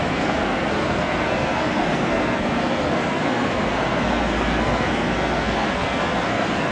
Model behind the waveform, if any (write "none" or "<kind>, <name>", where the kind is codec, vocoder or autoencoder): codec, SNAC